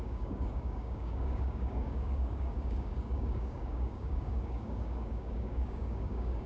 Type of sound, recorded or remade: remade